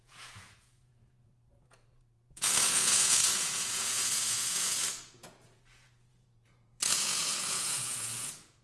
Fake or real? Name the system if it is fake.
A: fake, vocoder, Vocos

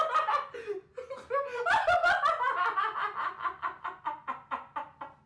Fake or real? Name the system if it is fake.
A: real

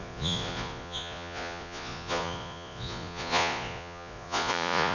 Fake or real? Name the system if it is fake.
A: fake, vocoder, Vocos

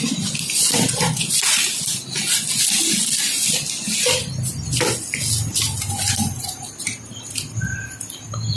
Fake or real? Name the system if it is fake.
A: real